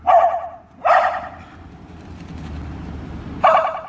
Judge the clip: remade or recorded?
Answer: recorded